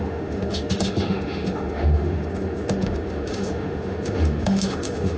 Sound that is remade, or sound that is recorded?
remade